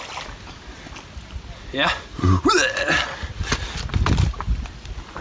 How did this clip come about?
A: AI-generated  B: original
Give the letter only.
B